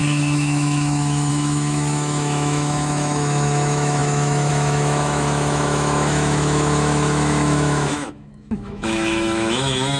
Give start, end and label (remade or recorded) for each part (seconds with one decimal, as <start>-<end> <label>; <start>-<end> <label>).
0.0-10.0 remade